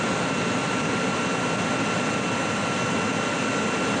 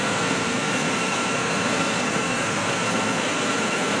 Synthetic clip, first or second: second